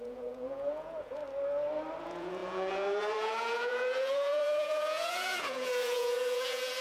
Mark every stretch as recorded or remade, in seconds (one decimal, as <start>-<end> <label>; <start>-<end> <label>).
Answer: 0.0-1.2 remade; 1.2-2.0 recorded; 2.0-6.8 remade